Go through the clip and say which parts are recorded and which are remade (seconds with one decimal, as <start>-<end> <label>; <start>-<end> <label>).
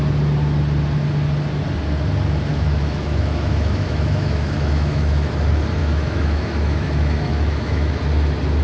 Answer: 0.0-2.5 recorded; 2.5-5.3 remade; 5.3-5.8 recorded; 5.8-8.0 remade; 8.0-8.6 recorded